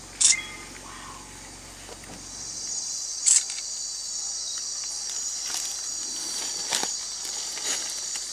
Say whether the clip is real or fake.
real